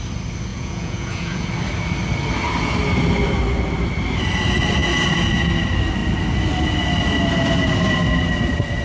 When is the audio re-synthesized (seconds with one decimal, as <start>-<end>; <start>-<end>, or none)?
0.5-1.5